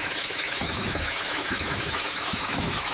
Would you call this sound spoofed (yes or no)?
yes